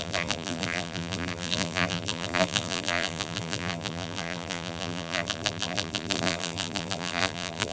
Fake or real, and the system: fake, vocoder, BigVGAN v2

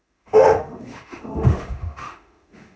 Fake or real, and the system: fake, autoencoder, DAC-VAE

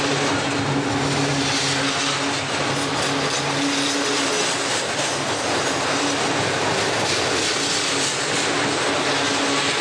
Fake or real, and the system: real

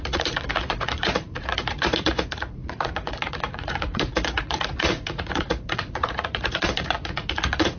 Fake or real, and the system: fake, vocoder, Vocos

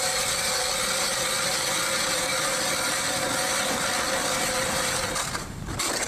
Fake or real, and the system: real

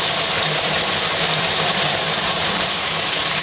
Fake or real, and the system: fake, vocoder, BigVGAN v2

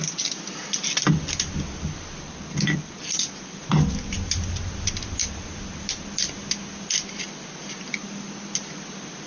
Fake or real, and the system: real